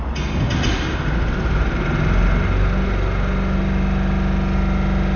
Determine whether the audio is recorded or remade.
recorded